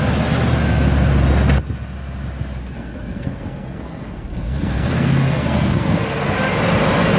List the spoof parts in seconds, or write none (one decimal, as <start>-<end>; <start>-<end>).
2.6-6.0